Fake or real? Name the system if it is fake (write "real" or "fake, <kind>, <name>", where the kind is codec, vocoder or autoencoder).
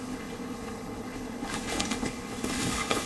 fake, codec, HILCodec